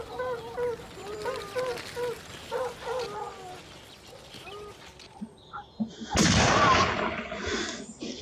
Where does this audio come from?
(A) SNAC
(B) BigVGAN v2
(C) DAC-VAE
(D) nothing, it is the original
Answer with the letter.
D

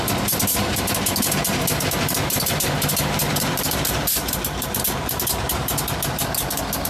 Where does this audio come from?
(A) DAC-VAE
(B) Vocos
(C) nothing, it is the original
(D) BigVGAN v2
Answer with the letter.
D